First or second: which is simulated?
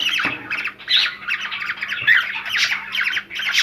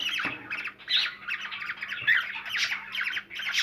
first